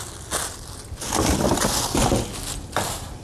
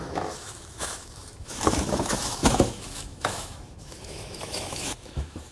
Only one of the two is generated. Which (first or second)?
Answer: second